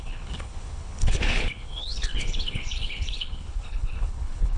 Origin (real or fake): fake